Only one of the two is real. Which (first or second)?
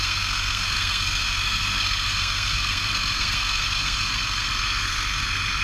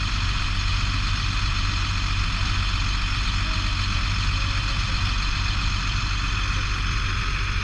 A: second